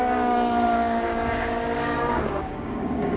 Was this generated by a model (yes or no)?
yes